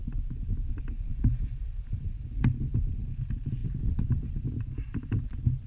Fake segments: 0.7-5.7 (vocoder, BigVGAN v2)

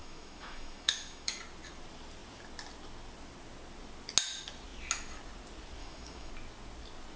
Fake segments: 0.0-1.4 (autoencoder, DAC-VAE); 5.8-6.3

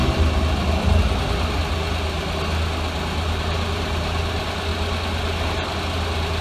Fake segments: none

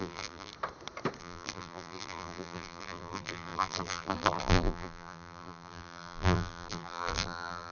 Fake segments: 0.0-0.5 (vocoder, BigVGAN v2); 1.2-7.7

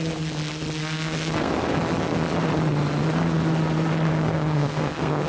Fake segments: 0.8-1.5 (codec, SNAC); 4.1-5.3

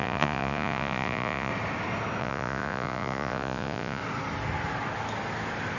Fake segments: 0.0-1.5 (vocoder, Vocos); 2.2-4.0